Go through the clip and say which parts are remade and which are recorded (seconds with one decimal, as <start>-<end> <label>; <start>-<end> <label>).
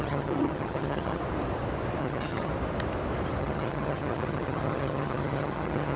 0.0-1.2 remade; 1.2-2.0 recorded; 2.0-2.5 remade; 2.5-3.4 recorded; 3.4-6.0 remade